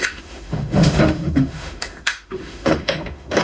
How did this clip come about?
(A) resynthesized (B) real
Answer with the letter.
A